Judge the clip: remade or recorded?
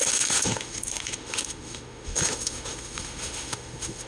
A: remade